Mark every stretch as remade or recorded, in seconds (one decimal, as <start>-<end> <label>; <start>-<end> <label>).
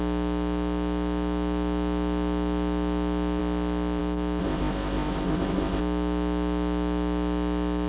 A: 0.0-4.4 recorded; 4.4-5.8 remade; 5.8-7.9 recorded